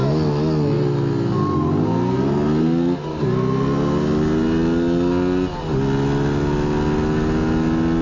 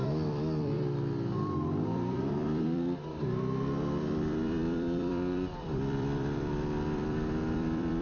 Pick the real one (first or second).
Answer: first